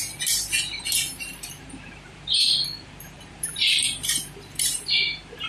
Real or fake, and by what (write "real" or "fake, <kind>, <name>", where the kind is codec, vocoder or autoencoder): fake, vocoder, BigVGAN v2